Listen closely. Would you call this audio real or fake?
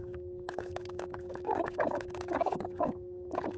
fake